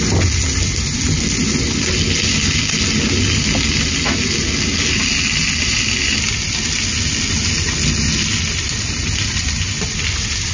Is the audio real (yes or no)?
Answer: yes